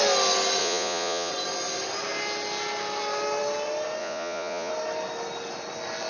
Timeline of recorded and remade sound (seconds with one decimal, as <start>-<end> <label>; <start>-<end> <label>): 0.0-0.6 recorded; 0.6-1.3 remade; 1.3-4.0 recorded; 4.0-4.7 remade; 4.7-6.1 recorded